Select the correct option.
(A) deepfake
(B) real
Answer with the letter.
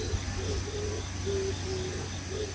B